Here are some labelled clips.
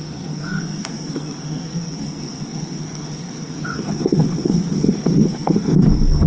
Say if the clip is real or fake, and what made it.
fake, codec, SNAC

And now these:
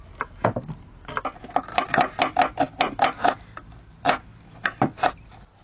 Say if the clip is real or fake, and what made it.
real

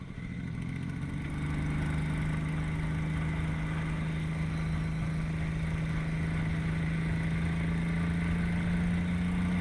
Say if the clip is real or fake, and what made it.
real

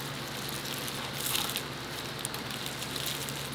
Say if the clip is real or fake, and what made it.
real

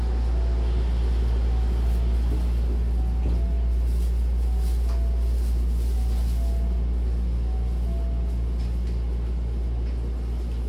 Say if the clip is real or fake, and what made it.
real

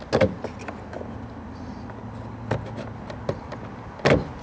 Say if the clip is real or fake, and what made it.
real